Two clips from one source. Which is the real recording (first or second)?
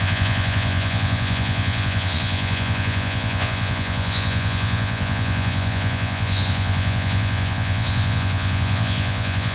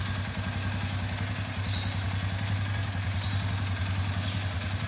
second